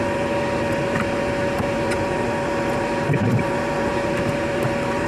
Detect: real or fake fake